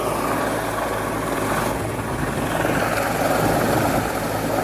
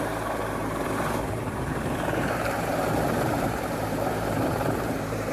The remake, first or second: second